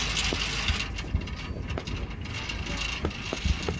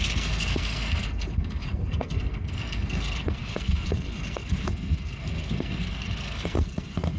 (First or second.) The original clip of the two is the first